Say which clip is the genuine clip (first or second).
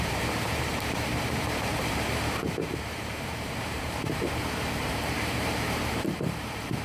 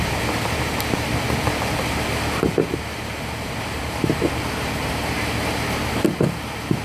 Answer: second